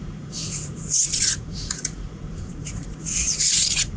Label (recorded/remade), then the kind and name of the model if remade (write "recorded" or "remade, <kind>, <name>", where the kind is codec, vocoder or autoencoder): remade, vocoder, Vocos